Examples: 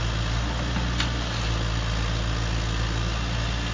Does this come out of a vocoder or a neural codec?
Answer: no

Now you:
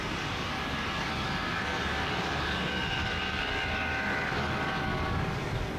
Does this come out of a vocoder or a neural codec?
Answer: yes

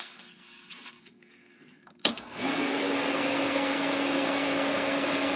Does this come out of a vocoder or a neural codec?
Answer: yes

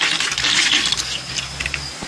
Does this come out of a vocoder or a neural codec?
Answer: no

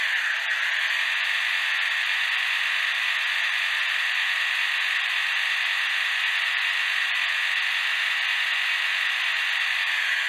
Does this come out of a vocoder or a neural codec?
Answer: no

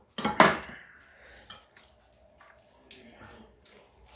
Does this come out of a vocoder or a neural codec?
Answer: no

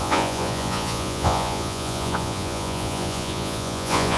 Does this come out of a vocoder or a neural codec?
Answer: yes